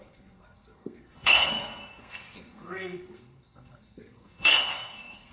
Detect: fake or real fake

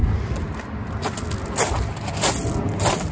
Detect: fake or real real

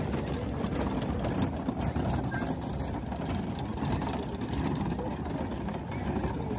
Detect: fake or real real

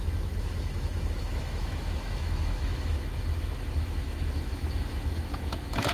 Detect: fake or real fake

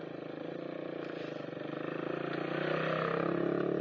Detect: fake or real real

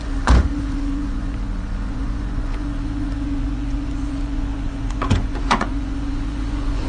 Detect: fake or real fake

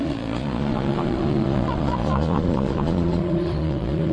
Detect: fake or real fake